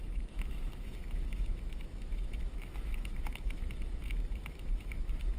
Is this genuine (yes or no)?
no